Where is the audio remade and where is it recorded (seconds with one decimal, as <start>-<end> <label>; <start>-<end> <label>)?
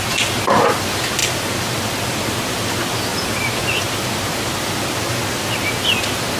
0.0-6.4 recorded